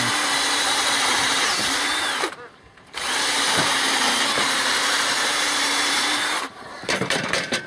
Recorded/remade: remade